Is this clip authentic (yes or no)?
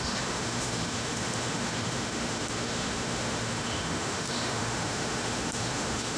no